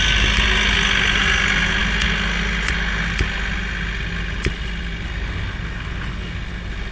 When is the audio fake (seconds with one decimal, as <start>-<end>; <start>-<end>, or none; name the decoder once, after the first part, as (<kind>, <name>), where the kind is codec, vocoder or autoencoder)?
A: none